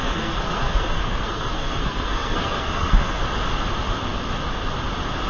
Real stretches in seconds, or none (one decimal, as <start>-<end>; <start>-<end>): 3.2-5.3